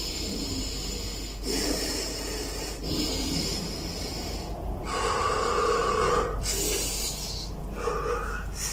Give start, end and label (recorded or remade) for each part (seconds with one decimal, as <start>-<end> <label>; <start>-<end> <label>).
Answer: 0.0-8.7 recorded